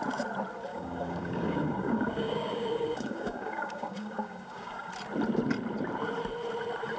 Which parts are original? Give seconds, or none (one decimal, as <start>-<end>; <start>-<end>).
0.0-0.7; 4.9-7.0